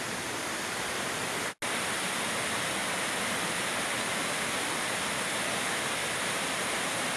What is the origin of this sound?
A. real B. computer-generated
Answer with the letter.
A